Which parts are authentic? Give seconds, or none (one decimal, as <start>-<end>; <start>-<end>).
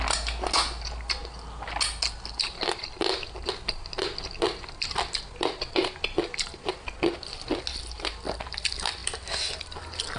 0.0-10.2